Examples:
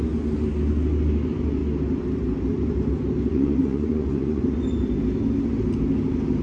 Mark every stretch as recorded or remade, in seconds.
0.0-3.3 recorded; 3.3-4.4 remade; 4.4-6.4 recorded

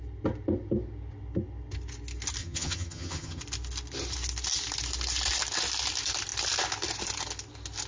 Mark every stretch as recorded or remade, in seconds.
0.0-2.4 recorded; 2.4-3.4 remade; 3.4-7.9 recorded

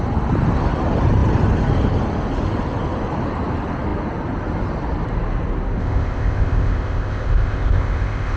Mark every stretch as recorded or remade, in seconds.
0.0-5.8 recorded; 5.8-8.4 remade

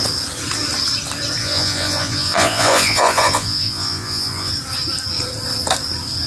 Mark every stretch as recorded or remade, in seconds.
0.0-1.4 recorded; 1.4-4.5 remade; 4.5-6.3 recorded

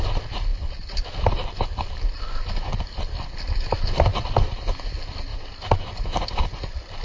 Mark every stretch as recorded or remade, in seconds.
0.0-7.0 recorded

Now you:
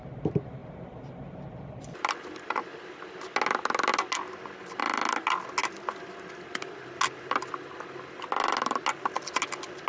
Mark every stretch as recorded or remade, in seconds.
0.0-9.9 recorded

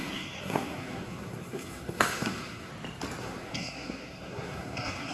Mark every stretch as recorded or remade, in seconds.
0.0-2.7 remade; 2.7-3.2 recorded; 3.2-5.1 remade

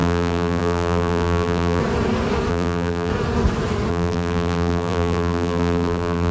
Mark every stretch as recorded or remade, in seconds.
0.0-1.8 remade; 1.8-2.5 recorded; 2.5-3.1 remade; 3.1-3.9 recorded; 3.9-6.3 remade